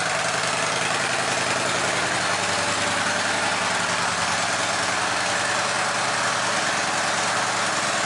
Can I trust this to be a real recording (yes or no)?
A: yes